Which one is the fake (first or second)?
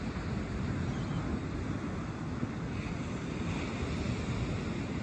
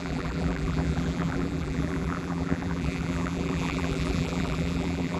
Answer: second